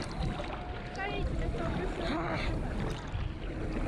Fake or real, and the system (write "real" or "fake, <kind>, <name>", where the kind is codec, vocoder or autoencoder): real